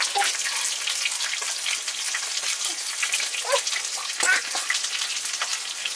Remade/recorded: recorded